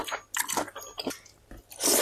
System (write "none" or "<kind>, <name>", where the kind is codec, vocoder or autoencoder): none